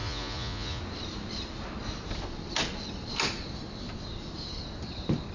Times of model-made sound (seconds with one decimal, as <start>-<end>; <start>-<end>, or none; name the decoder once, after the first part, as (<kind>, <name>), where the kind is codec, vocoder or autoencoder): 0.0-0.8 (vocoder, Vocos)